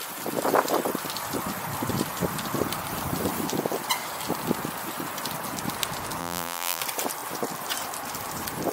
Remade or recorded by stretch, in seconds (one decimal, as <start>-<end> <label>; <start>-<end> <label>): 0.0-6.2 recorded; 6.2-6.8 remade; 6.8-8.7 recorded